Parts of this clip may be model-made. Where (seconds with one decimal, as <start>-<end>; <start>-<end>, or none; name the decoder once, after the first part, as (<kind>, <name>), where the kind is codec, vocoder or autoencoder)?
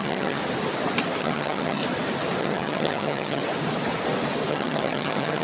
0.0-0.4 (vocoder, HiFi-GAN); 1.2-1.8; 2.4-3.4; 4.5-5.4